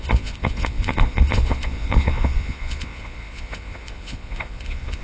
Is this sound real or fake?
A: fake